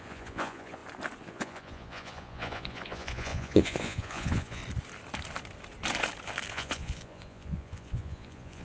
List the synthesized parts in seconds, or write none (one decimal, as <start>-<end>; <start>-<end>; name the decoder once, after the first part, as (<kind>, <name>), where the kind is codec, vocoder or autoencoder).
0.0-0.8 (vocoder, Vocos); 1.3-4.6; 6.5-8.6